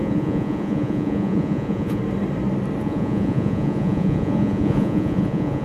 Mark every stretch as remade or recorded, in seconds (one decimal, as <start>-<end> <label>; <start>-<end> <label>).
0.0-2.0 remade; 2.0-2.8 recorded; 2.8-5.6 remade